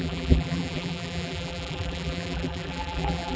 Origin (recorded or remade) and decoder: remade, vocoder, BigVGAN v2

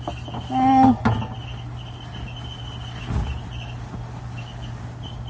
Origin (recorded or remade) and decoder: recorded